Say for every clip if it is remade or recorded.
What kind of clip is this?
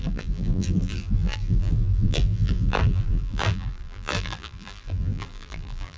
remade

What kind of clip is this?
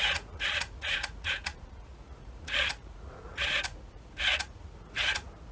remade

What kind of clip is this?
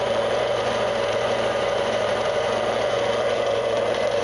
remade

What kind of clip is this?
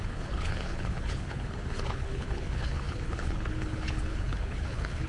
remade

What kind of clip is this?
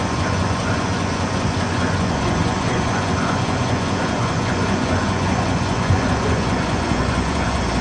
remade